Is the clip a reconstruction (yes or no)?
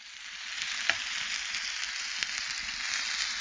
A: no